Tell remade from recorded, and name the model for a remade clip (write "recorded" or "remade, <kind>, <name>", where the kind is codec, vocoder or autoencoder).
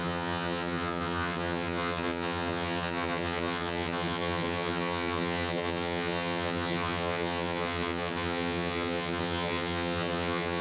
remade, vocoder, HiFi-GAN